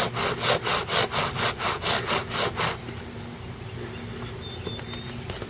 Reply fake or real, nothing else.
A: real